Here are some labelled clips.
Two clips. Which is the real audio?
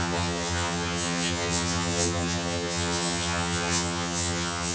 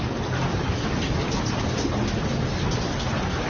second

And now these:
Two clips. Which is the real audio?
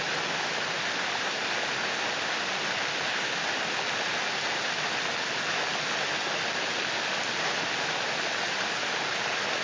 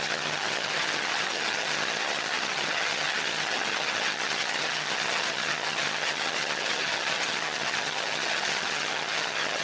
first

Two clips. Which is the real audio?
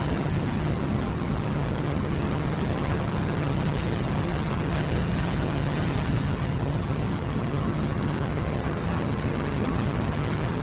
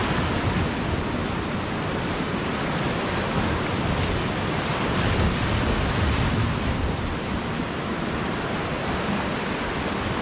second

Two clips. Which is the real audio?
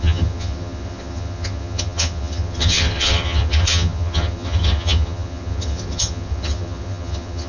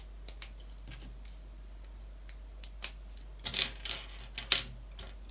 second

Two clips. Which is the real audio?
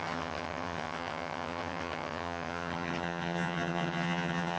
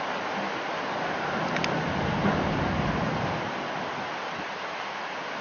second